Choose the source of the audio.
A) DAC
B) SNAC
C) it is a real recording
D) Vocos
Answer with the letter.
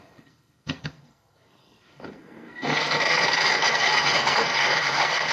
B